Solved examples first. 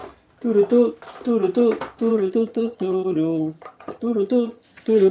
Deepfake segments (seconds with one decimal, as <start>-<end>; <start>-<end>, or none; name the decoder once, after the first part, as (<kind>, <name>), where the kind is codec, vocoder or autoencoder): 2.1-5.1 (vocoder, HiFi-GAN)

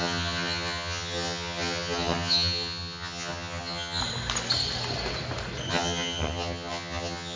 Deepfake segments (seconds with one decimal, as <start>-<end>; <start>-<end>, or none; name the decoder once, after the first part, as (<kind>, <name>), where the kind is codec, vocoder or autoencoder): 0.0-4.0 (vocoder, HiFi-GAN); 5.7-7.4

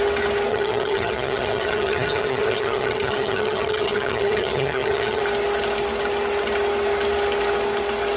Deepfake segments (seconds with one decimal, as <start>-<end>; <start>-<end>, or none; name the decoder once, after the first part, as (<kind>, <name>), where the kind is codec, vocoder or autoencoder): 0.5-5.2 (vocoder, HiFi-GAN)